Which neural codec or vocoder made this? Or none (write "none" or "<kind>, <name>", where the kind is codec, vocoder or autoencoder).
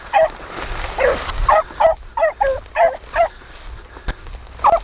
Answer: none